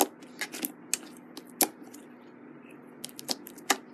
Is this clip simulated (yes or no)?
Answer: no